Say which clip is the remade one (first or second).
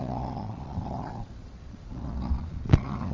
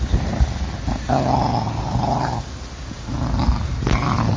first